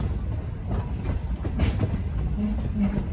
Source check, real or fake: real